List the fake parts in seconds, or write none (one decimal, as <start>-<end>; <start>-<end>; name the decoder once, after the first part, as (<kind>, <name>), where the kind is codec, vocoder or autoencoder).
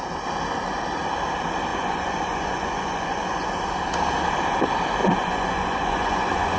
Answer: 1.7-3.5 (vocoder, Vocos); 5.0-6.6